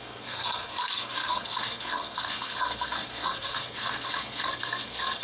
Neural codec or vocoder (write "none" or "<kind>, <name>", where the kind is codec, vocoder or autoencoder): codec, SNAC